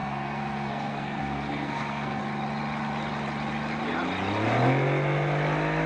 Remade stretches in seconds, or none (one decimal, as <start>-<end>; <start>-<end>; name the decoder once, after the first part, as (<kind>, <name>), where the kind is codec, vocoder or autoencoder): 0.0-2.2 (codec, SNAC)